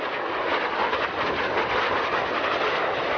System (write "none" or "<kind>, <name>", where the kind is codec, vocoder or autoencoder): none